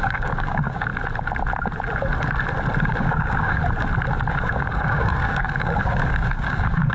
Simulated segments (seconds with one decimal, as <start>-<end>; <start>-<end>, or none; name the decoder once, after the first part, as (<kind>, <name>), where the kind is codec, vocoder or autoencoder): 0.0-0.9 (codec, DAC); 2.8-3.6; 4.3-6.9

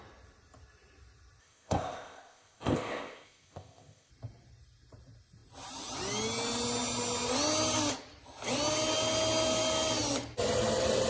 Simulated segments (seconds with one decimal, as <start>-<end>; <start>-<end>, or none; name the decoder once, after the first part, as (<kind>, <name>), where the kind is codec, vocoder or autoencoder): 1.4-4.1 (codec, ZipCodec)

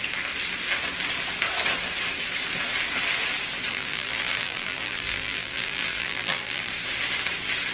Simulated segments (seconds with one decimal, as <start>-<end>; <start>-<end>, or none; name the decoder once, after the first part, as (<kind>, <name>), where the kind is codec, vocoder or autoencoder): 3.7-6.7 (vocoder, BigVGAN v2)

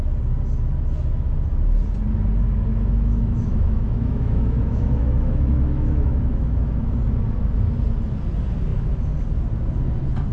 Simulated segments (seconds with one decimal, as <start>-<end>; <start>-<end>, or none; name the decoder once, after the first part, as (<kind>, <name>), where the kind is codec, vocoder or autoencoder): 2.7-7.0 (autoencoder, DAC-VAE)

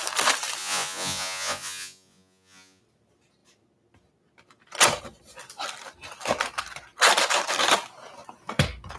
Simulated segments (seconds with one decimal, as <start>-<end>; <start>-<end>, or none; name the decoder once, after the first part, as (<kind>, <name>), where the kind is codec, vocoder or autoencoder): 0.6-2.8 (vocoder, Vocos)

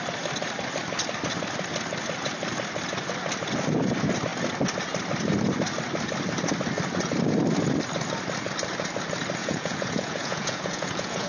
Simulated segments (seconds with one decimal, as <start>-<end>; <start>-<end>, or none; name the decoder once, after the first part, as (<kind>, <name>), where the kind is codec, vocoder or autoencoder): 9.4-11.3 (vocoder, Vocos)

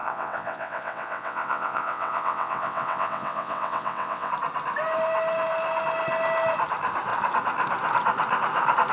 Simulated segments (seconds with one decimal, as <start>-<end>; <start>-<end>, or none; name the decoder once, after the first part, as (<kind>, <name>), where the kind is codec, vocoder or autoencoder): 0.0-4.3 (vocoder, WaveNeXt)